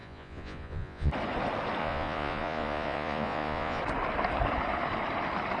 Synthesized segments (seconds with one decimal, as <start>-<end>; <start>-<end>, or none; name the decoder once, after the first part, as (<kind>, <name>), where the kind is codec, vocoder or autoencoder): 0.0-1.1 (vocoder, Vocos); 1.8-3.8